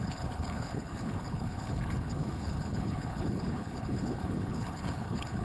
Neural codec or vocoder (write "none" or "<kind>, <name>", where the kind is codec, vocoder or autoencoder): codec, HILCodec